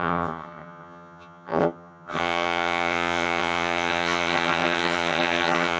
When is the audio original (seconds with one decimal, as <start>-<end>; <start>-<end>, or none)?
none